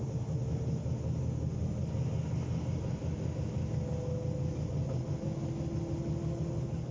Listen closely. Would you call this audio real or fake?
real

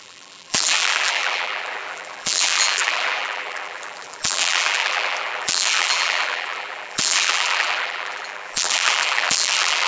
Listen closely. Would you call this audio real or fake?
fake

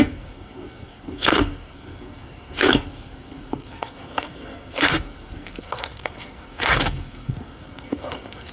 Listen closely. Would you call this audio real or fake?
fake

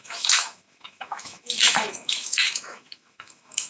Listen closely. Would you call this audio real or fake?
fake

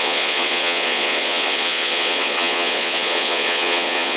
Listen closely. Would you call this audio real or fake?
fake